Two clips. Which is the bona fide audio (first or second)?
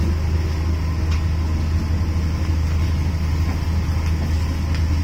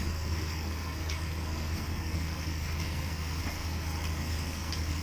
first